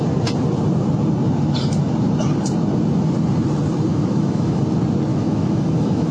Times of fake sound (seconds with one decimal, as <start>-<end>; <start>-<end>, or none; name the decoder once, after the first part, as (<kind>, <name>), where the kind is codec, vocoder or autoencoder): 3.9-4.6 (autoencoder, DAC-VAE); 5.1-6.1